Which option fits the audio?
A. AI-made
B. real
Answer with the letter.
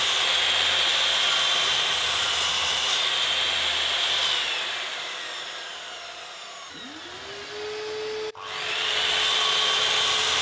B